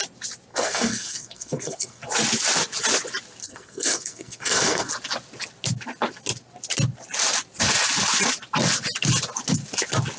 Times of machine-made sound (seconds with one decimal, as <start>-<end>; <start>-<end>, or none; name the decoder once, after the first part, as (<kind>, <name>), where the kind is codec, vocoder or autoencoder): 0.5-2.0 (codec, SNAC); 3.4-4.9